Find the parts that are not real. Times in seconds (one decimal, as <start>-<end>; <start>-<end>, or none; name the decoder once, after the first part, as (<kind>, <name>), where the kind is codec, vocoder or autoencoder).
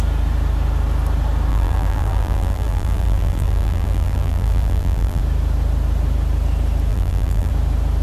1.5-5.2 (vocoder, BigVGAN v2); 6.9-7.5